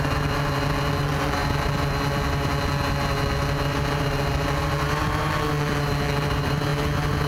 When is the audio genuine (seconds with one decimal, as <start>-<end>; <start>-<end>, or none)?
0.0-7.3